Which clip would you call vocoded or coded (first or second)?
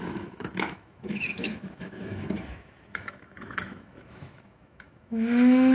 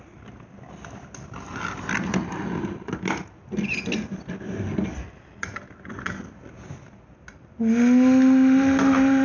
first